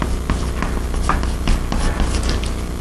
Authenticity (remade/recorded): recorded